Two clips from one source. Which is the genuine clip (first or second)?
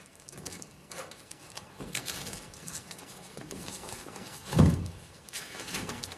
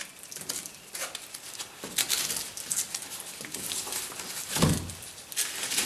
second